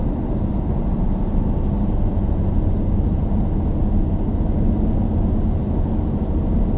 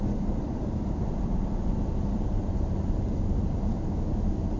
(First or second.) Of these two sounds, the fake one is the second